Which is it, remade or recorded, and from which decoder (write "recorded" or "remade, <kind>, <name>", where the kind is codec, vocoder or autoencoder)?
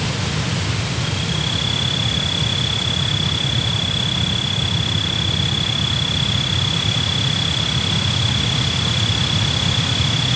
recorded